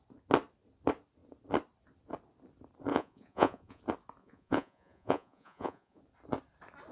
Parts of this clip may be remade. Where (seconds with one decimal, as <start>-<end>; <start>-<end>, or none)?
2.9-3.8; 4.2-6.0